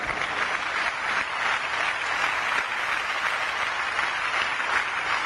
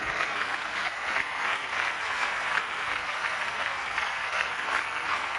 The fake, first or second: second